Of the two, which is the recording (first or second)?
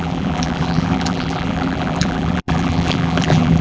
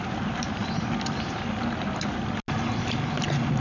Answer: second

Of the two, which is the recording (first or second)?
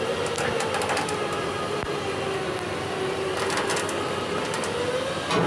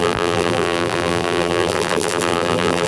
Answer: first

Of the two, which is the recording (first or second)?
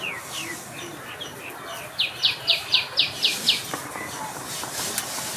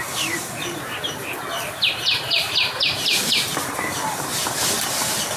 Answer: first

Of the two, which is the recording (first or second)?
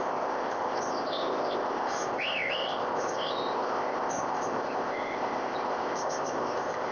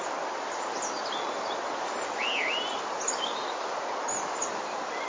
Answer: second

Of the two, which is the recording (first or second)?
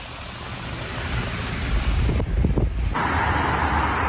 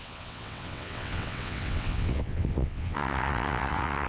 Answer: first